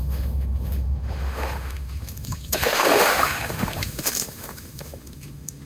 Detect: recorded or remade remade